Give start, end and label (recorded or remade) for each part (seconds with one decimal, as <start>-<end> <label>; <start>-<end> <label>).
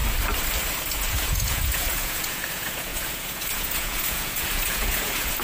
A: 0.0-0.9 recorded; 0.9-5.4 remade